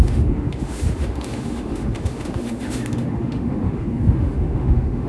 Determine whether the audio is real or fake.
fake